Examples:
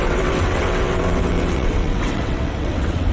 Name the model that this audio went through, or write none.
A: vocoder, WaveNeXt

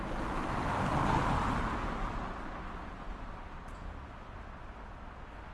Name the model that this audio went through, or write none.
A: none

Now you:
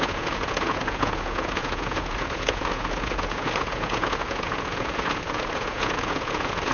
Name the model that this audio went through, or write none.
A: vocoder, Vocos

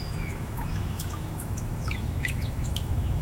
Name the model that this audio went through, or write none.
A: autoencoder, DAC-VAE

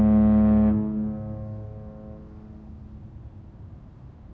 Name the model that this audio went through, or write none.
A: none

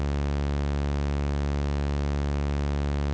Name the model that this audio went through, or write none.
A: none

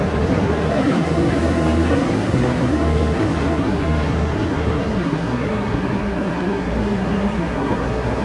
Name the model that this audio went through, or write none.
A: codec, SNAC